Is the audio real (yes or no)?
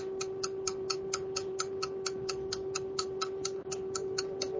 yes